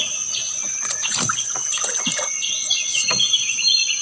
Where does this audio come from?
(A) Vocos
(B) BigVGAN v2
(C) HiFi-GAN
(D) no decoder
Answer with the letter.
A